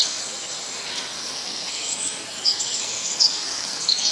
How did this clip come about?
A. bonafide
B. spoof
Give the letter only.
B